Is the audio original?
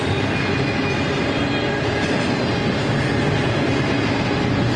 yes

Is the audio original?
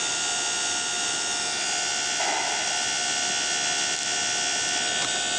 yes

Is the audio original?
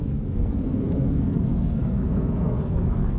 no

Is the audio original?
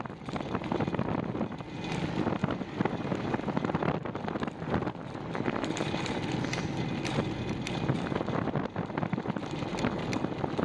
yes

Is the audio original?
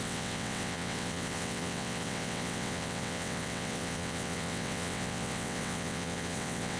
no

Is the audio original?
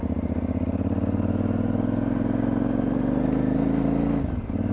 yes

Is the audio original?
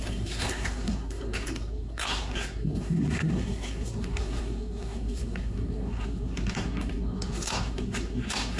no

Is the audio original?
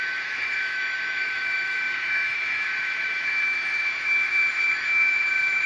no